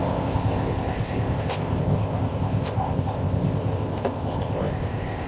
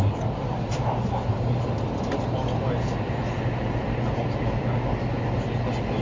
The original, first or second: second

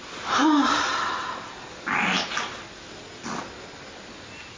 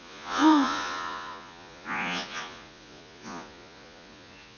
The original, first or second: first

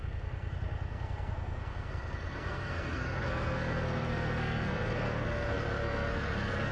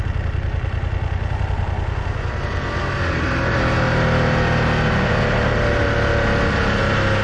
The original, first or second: second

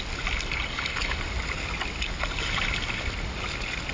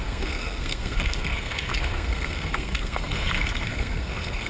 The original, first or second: first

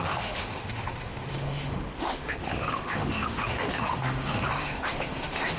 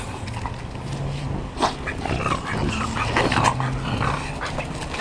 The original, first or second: second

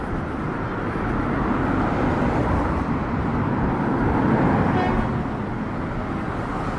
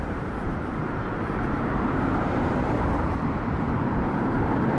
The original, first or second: first